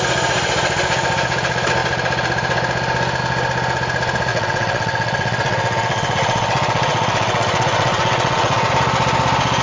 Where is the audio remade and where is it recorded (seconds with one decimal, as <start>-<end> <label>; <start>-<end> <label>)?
0.0-4.3 recorded; 4.3-8.7 remade; 8.7-9.6 recorded